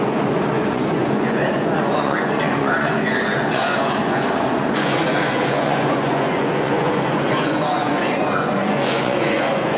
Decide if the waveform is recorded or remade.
remade